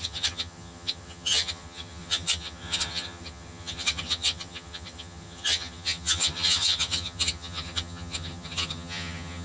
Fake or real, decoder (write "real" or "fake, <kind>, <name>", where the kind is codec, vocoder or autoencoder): fake, vocoder, HiFi-GAN